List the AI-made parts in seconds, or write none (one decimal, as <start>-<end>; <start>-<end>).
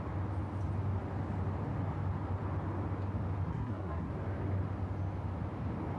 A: 3.5-4.1